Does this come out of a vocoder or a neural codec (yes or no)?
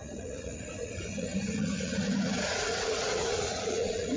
yes